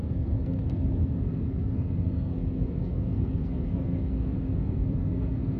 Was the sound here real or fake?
fake